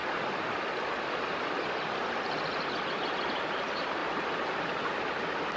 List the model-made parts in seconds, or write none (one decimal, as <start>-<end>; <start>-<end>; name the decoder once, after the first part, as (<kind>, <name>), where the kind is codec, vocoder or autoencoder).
0.0-4.0 (vocoder, BigVGAN v2)